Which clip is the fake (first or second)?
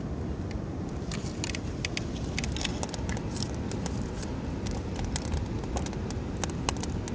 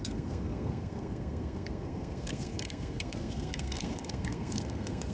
second